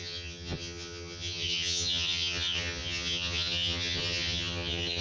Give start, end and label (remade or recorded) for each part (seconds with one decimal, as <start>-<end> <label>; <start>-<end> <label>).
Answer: 0.0-5.0 remade